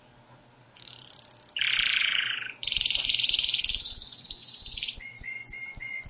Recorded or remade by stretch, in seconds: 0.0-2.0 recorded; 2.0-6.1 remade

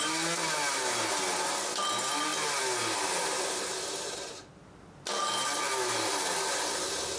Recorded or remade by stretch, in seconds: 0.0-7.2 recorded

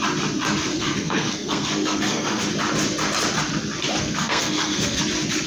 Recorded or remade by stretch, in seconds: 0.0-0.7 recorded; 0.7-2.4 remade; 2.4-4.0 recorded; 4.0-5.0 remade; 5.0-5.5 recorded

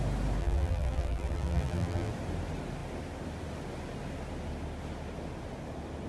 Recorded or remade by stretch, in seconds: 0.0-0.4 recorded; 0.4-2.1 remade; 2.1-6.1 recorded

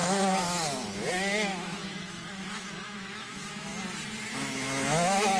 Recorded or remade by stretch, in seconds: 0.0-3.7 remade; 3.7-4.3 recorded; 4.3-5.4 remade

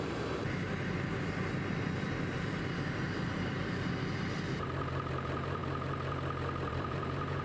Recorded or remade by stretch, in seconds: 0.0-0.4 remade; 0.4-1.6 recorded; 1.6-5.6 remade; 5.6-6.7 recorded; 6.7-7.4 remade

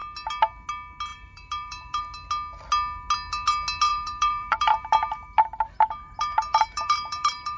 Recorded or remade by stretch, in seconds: 0.0-1.1 recorded; 1.1-2.0 remade; 2.0-3.9 recorded; 3.9-7.6 remade

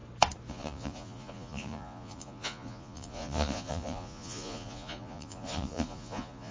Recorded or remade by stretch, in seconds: 0.0-0.5 recorded; 0.5-6.5 remade